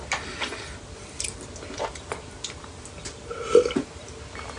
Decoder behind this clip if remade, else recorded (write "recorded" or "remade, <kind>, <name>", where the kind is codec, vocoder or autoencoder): recorded